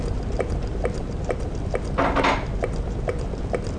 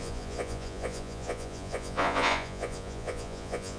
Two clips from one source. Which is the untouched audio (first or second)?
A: first